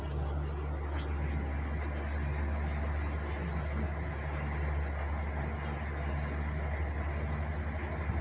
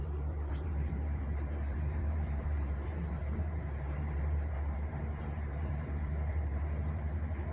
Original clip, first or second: first